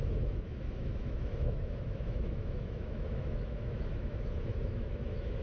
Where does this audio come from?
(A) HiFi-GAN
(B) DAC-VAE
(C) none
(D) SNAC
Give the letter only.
B